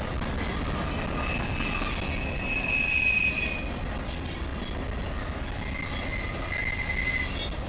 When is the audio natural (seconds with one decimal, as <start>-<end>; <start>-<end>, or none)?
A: 0.0-7.7